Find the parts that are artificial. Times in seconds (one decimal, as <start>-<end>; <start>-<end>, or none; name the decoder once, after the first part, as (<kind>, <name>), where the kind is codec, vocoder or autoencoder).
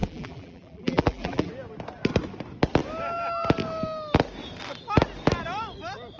0.0-1.5 (vocoder, BigVGAN v2)